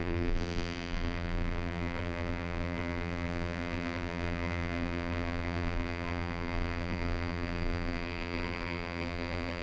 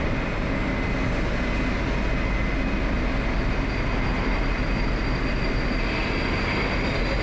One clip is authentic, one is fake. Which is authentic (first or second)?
second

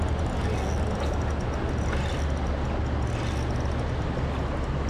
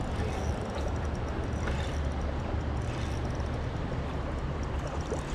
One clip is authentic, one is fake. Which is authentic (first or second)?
first